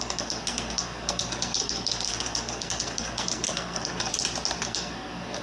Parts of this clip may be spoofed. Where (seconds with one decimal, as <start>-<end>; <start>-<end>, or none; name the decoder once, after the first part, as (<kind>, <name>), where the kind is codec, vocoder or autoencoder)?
0.0-4.1 (codec, SNAC); 4.6-5.4